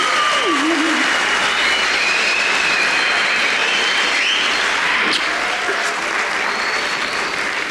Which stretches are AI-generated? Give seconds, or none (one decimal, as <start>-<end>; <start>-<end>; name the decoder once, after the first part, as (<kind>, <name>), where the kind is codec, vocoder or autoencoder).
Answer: none